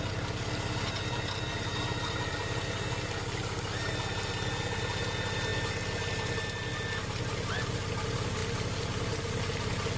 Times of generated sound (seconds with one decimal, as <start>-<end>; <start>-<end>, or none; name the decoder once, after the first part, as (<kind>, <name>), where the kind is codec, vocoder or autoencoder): 1.5-2.8 (vocoder, BigVGAN v2)